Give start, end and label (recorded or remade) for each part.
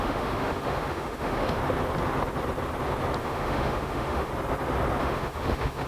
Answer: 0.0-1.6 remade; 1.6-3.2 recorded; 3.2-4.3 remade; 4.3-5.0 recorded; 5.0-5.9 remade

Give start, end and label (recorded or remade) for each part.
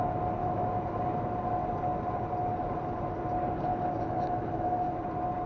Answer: 0.0-0.4 recorded; 0.4-1.0 remade; 1.0-3.7 recorded; 3.7-5.0 remade; 5.0-5.5 recorded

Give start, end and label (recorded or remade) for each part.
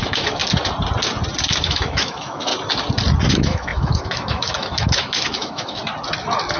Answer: 0.0-0.4 remade; 0.4-1.6 recorded; 1.6-2.5 remade; 2.5-3.3 recorded; 3.3-5.8 remade; 5.8-6.6 recorded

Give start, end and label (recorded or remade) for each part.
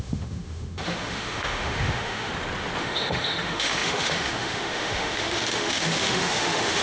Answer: 0.0-2.3 remade; 2.3-2.8 recorded; 2.8-6.8 remade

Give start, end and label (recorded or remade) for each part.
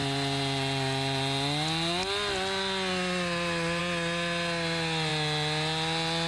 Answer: 0.0-6.3 recorded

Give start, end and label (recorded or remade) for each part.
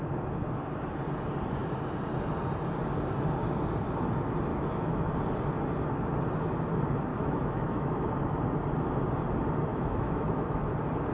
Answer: 0.0-4.5 recorded; 4.5-5.1 remade; 5.1-7.1 recorded; 7.1-8.1 remade; 8.1-9.7 recorded; 9.7-10.6 remade; 10.6-11.1 recorded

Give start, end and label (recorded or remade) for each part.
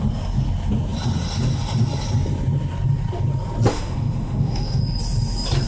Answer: 0.0-3.7 recorded; 3.7-4.8 remade; 4.8-5.7 recorded